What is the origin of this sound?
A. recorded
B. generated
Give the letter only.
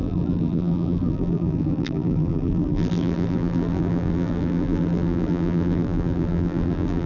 B